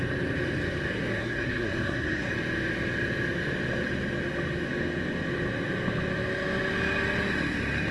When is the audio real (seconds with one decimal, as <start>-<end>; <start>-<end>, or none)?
0.0-0.9; 2.3-7.9